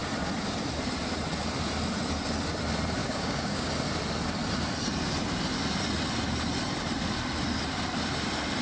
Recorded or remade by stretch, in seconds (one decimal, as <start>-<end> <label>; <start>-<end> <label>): 0.0-3.0 recorded; 3.0-3.7 remade; 3.7-8.6 recorded

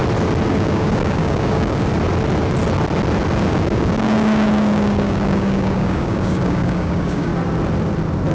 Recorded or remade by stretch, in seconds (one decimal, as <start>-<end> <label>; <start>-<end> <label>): 0.0-0.5 recorded; 0.5-1.9 remade; 1.9-3.4 recorded; 3.4-7.3 remade; 7.3-8.3 recorded

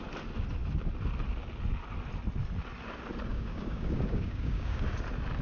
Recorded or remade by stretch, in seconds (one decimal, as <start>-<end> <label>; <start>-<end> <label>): 0.0-3.3 recorded; 3.3-4.8 remade; 4.8-5.4 recorded

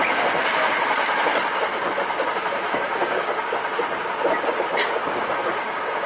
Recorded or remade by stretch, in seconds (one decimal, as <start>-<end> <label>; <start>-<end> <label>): 0.0-3.0 recorded; 3.0-3.5 remade; 3.5-4.8 recorded; 4.8-6.1 remade

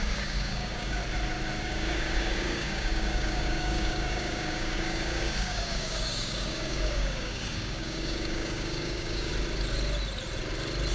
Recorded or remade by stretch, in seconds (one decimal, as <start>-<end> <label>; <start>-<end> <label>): 0.0-1.0 remade; 1.0-1.6 recorded; 1.6-9.3 remade; 9.3-10.9 recorded

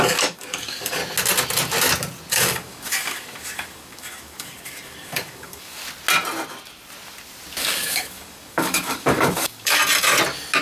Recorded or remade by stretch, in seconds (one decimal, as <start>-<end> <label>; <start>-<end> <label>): 0.0-1.0 remade; 1.0-2.3 recorded; 2.3-5.8 remade; 5.8-7.6 recorded; 7.6-9.8 remade; 9.8-10.6 recorded

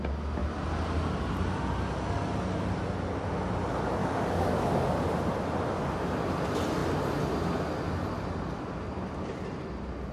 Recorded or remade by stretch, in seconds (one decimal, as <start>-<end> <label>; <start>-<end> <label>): 0.0-4.0 recorded; 4.0-4.7 remade; 4.7-10.1 recorded

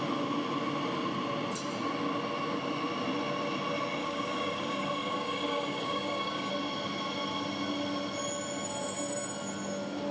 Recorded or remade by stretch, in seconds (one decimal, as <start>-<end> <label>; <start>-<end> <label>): 0.0-4.0 recorded; 4.0-6.5 remade; 6.5-10.1 recorded